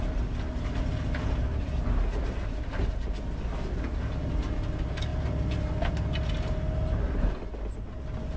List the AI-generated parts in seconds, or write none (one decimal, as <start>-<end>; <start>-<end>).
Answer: none